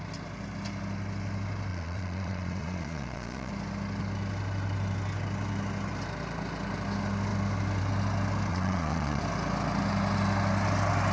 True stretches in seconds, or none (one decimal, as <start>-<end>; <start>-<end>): 0.0-1.7; 3.5-8.5; 9.2-11.1